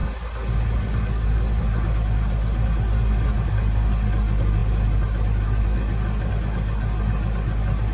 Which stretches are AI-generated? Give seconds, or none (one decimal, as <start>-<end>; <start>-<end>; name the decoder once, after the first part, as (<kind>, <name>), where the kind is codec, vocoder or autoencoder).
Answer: none